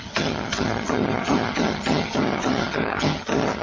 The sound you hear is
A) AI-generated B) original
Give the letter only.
A